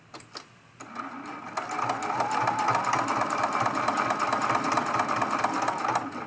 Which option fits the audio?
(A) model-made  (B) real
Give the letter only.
B